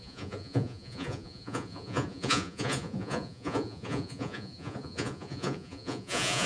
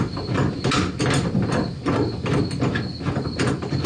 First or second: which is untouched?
second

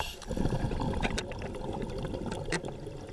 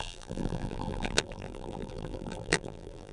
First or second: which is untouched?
first